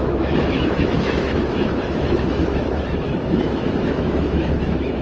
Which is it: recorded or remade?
remade